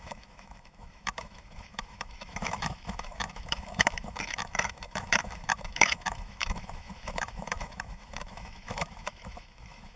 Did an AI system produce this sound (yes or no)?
yes